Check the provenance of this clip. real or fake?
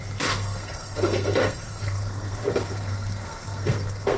fake